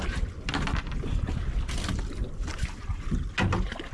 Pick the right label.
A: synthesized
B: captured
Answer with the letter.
B